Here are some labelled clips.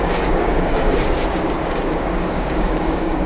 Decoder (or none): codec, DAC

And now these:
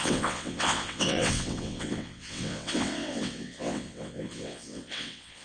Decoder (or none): vocoder, WaveNeXt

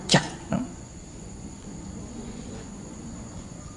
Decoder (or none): vocoder, Vocos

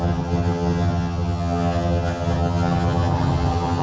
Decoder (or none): vocoder, HiFi-GAN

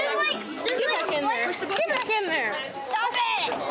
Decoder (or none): none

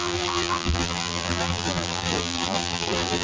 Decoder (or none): vocoder, BigVGAN v2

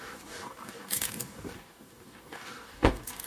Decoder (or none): codec, DAC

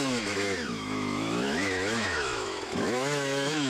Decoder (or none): autoencoder, DAC-VAE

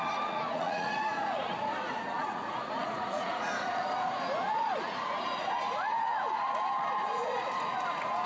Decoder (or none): vocoder, Vocos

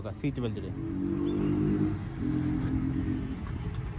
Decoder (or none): none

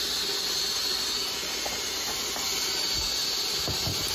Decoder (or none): none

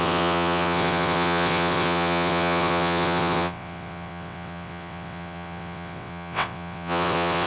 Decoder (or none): vocoder, WaveNeXt